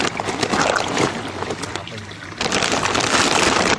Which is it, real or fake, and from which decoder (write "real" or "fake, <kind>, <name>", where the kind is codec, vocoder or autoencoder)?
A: real